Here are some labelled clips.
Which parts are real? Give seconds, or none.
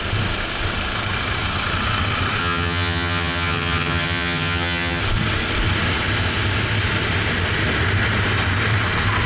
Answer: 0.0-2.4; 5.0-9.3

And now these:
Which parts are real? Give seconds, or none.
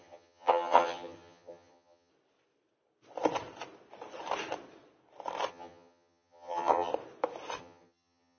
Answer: 2.1-5.5; 6.9-7.6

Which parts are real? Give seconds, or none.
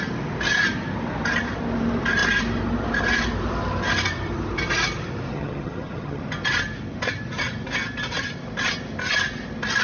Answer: 0.0-5.3; 6.2-9.8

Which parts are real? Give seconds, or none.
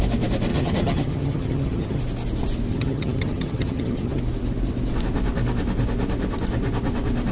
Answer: 0.0-0.5; 2.0-2.7; 4.2-7.3